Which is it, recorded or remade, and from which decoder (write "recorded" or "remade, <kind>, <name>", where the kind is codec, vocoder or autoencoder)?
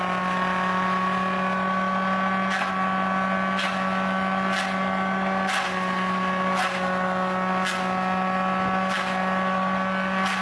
recorded